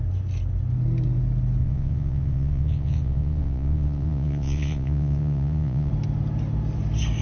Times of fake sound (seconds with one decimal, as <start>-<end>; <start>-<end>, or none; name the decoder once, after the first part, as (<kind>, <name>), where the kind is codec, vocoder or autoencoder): 1.6-5.9 (vocoder, Vocos)